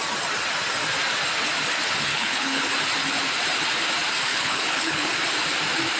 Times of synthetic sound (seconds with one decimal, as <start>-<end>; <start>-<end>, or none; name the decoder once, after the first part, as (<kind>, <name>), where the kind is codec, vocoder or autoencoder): 2.1-2.6 (codec, HILCodec); 4.3-5.1